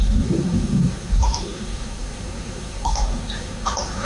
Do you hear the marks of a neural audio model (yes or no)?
yes